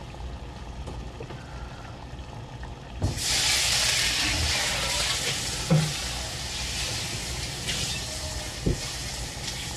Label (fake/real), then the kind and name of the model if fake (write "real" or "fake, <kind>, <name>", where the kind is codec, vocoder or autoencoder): real